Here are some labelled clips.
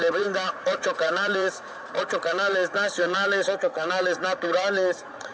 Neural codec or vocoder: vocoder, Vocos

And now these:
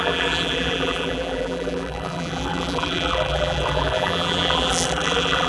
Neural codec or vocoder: vocoder, BigVGAN v2